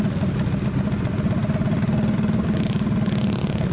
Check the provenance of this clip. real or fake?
real